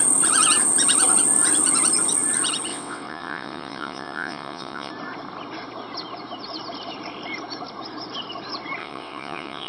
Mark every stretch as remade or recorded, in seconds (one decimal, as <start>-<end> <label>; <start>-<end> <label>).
0.0-2.7 recorded; 2.7-4.9 remade; 4.9-8.8 recorded; 8.8-9.7 remade